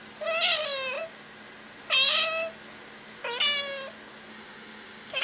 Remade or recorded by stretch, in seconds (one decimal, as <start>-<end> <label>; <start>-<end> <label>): 0.0-4.3 recorded; 4.3-5.2 remade